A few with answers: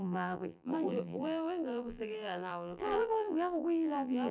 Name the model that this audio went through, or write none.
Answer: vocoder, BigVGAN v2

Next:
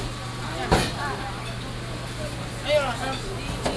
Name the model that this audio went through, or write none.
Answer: none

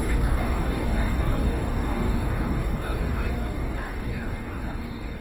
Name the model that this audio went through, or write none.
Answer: codec, DAC